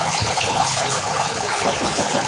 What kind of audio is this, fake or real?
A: fake